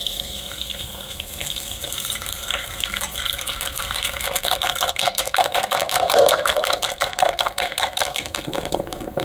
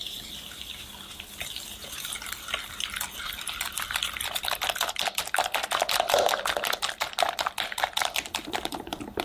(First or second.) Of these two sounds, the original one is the second